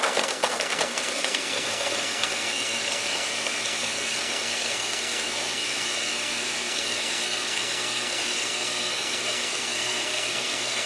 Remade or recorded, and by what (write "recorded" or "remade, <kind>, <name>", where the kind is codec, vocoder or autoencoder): remade, codec, SNAC